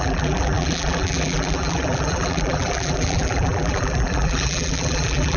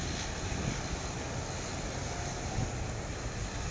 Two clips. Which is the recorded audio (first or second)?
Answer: second